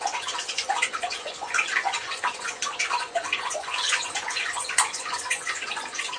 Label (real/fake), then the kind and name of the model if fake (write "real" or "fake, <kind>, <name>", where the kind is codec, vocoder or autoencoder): fake, vocoder, Vocos